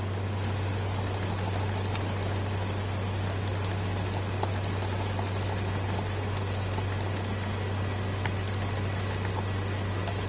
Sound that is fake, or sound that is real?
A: real